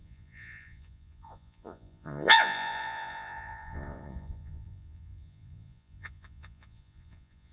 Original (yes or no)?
no